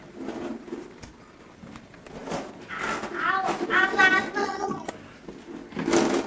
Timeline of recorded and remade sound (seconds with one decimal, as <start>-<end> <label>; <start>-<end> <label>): 0.0-4.4 recorded; 4.4-4.9 remade; 4.9-6.3 recorded